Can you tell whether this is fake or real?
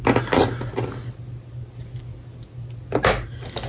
real